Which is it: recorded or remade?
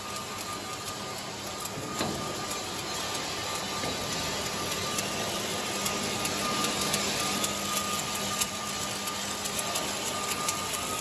recorded